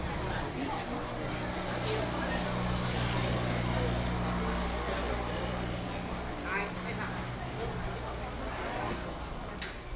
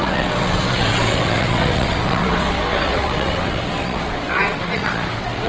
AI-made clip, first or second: second